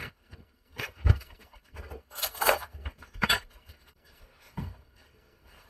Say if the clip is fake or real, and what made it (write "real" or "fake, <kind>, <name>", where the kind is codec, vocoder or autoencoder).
fake, codec, SNAC